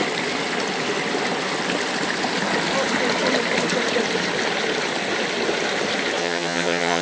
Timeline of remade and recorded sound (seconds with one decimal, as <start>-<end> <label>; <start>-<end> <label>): 0.0-6.2 recorded; 6.2-7.0 remade